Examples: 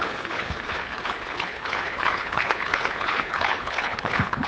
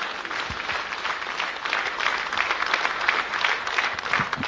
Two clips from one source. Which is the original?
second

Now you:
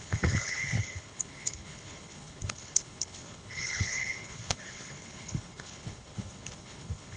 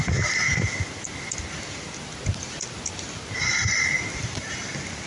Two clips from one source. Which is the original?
second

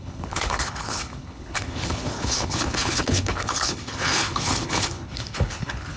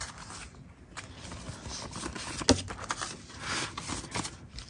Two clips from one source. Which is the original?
second